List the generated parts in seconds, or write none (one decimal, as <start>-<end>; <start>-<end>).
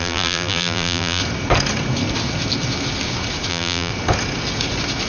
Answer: 0.0-1.2; 3.5-3.9